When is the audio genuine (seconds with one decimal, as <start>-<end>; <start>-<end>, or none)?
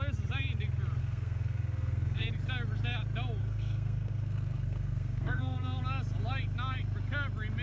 0.0-1.0; 2.3-3.4; 5.8-7.6